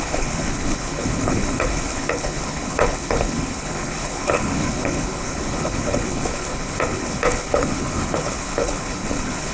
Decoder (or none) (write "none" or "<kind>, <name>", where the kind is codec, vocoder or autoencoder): codec, HILCodec